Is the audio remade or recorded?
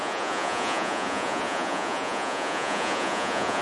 remade